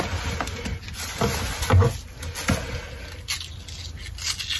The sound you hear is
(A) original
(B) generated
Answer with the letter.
A